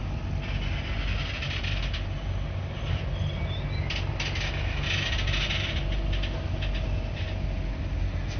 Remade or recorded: recorded